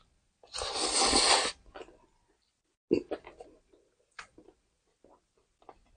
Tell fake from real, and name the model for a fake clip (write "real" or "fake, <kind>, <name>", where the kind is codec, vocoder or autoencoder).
real